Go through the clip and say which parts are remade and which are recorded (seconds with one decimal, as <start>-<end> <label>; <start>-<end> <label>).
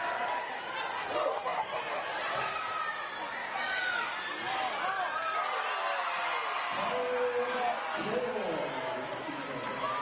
0.0-10.0 recorded